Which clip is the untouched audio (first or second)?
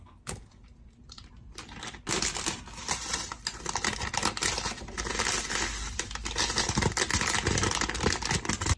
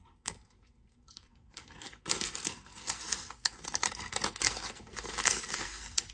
first